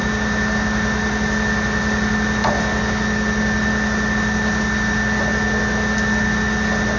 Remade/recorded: recorded